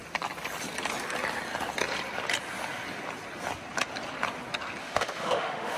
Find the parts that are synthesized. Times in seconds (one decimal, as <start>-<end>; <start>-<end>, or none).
4.8-5.8